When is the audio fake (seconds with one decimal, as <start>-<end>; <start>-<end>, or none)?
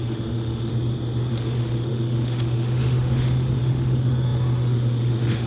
0.0-0.7; 1.3-5.5